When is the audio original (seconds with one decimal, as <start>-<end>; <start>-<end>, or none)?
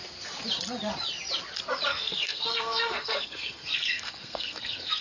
0.0-1.9